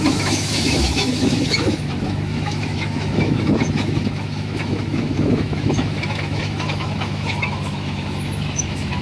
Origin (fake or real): fake